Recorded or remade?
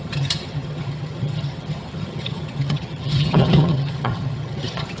remade